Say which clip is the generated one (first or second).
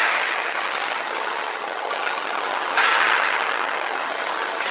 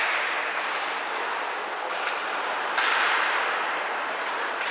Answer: first